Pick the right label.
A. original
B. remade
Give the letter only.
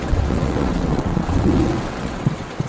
B